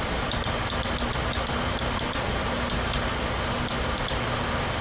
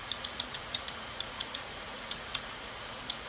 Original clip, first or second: first